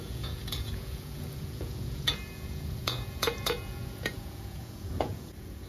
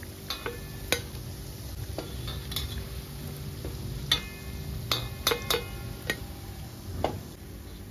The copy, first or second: first